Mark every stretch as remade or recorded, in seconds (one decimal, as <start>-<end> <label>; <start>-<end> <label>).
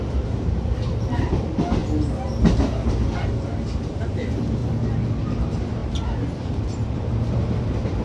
0.0-1.8 remade; 1.8-3.9 recorded; 3.9-4.6 remade; 4.6-5.3 recorded; 5.3-8.0 remade